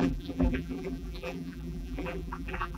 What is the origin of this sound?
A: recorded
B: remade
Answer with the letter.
B